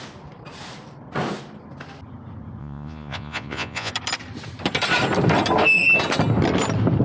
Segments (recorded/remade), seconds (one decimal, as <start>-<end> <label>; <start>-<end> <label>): 0.0-2.6 recorded; 2.6-3.9 remade; 3.9-7.0 recorded